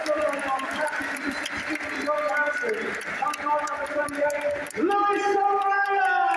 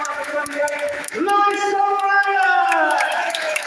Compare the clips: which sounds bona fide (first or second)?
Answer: first